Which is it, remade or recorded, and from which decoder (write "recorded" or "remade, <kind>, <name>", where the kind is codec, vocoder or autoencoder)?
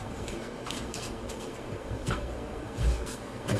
remade, codec, SNAC